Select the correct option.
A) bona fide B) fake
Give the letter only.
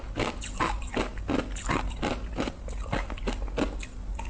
A